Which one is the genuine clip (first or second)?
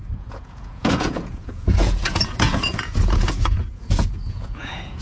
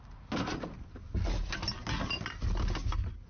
second